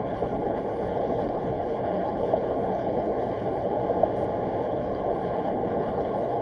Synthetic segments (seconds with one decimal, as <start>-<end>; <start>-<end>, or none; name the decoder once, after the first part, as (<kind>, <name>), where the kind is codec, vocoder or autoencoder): 0.0-3.8 (codec, HILCodec); 4.6-6.4